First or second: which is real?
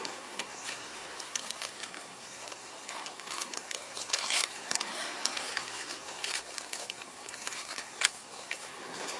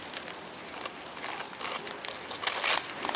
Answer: second